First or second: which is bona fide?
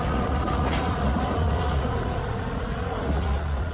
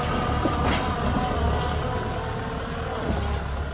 second